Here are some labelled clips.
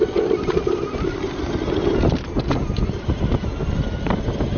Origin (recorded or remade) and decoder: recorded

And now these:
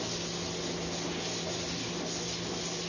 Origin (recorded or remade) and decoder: recorded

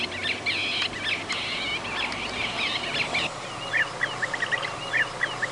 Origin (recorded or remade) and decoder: recorded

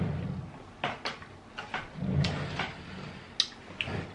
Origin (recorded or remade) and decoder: recorded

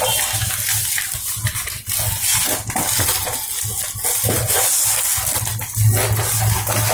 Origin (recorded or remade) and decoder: recorded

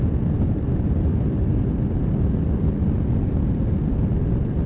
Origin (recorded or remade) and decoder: recorded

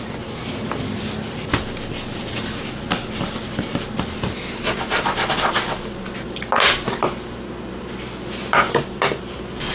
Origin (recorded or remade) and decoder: recorded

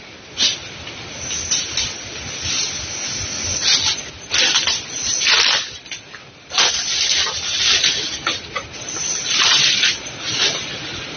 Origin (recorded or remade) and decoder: recorded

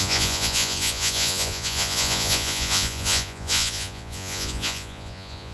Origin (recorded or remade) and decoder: remade, vocoder, Vocos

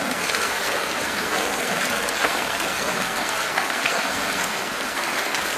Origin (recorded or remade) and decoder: remade, codec, SNAC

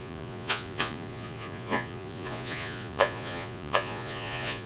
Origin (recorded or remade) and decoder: remade, vocoder, Vocos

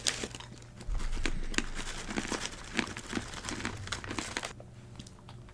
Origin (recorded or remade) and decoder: recorded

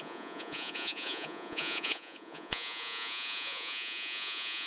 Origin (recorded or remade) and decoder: remade, vocoder, Vocos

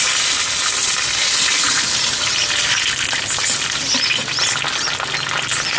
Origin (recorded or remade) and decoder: recorded